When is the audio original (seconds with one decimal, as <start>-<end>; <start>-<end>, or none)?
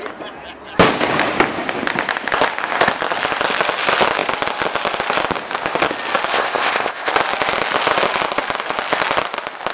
0.0-6.3; 7.1-9.7